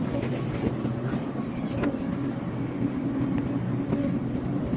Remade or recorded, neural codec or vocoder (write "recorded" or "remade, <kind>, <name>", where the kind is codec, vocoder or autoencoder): remade, vocoder, BigVGAN v2